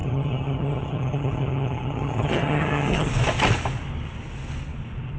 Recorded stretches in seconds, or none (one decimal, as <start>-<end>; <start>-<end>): 3.1-5.2